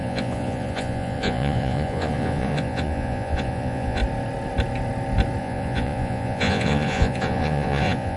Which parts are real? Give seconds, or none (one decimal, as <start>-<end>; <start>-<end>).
4.0-5.4